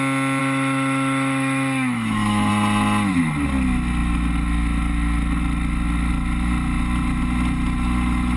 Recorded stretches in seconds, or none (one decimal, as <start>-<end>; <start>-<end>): 0.0-0.4; 2.5-8.4